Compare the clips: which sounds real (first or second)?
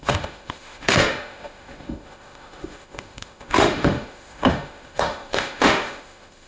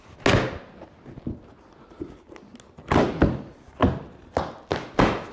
second